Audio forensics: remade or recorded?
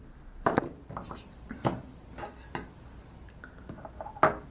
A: recorded